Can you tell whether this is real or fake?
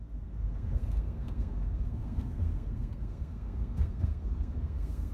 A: fake